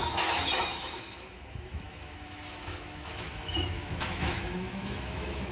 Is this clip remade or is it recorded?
remade